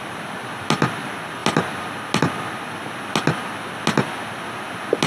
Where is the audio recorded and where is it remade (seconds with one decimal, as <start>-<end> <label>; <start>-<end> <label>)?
0.0-5.1 recorded